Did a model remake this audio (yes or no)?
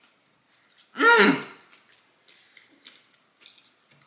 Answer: no